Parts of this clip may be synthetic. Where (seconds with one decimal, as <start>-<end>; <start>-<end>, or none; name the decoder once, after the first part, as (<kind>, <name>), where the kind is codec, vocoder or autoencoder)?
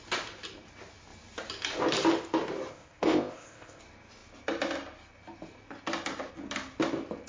2.7-3.8 (codec, ZipCodec)